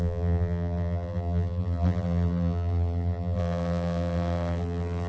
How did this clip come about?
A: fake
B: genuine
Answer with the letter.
A